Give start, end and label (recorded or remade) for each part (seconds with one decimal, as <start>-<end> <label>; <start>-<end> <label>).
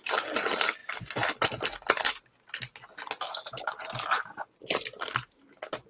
0.0-5.9 recorded